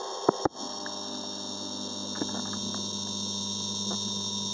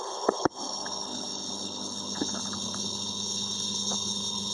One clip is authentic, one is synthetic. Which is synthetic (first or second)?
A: second